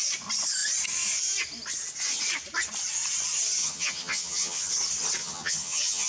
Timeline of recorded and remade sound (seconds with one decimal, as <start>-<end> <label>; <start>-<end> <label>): 0.0-3.6 recorded; 3.6-4.7 remade; 4.7-5.2 recorded; 5.2-6.1 remade